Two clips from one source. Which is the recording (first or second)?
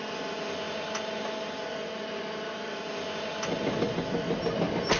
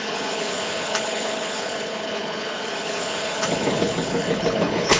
first